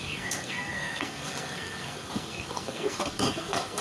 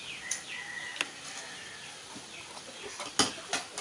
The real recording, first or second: second